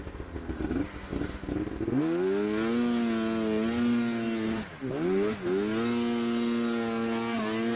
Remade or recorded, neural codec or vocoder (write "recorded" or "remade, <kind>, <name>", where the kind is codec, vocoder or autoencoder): recorded